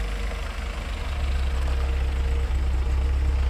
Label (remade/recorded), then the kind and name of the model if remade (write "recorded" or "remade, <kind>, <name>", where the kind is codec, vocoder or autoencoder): recorded